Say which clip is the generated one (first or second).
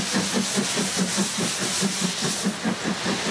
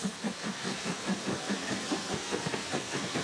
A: second